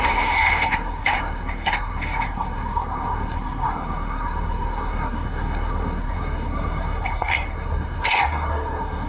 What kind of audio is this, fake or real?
fake